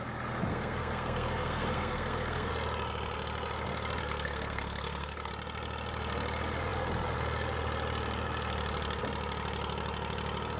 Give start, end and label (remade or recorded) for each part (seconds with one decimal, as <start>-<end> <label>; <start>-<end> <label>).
0.0-0.5 recorded; 0.5-2.5 remade; 2.5-4.0 recorded; 4.0-5.3 remade; 5.3-10.6 recorded

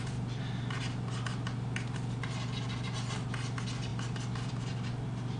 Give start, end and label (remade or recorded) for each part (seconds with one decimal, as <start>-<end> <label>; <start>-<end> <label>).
0.0-5.4 recorded

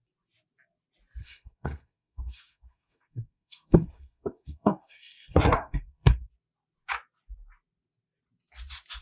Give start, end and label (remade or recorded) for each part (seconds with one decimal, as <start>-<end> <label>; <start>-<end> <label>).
0.0-1.2 recorded; 1.2-6.3 remade; 6.3-9.0 recorded

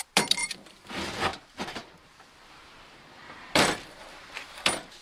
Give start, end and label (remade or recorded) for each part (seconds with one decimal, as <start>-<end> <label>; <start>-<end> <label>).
0.0-5.0 remade